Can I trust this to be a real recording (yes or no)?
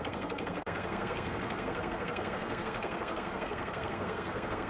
no